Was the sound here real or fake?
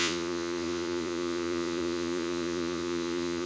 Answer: fake